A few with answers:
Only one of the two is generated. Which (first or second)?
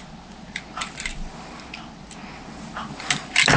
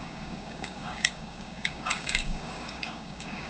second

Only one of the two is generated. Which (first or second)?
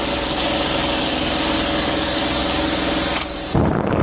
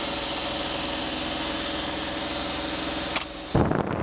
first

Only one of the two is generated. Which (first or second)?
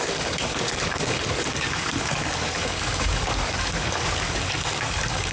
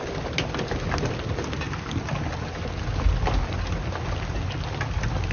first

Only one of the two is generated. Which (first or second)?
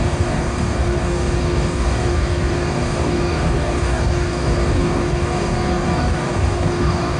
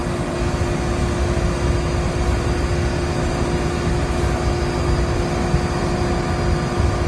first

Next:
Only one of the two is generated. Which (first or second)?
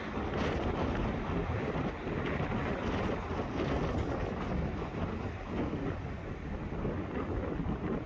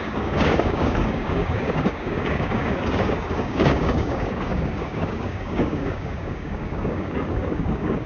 second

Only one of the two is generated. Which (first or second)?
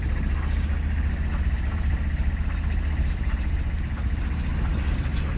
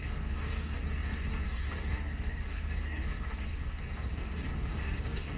second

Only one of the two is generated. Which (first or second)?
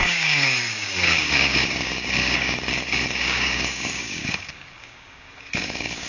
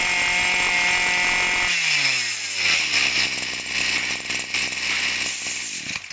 first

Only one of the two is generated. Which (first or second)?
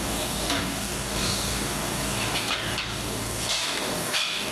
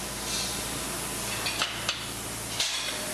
first